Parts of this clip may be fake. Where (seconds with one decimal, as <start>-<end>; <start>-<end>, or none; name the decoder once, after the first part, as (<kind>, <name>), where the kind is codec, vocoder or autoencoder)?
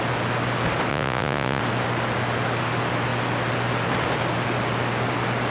0.9-1.6 (vocoder, Vocos)